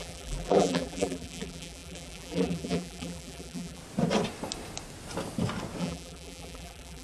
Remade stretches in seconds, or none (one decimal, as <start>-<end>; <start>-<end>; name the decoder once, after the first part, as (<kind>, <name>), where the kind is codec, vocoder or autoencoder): 0.0-3.8 (vocoder, BigVGAN v2); 5.8-7.0